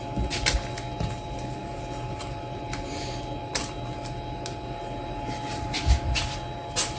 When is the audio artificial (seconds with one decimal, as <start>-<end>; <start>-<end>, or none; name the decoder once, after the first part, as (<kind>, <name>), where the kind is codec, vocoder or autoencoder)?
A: none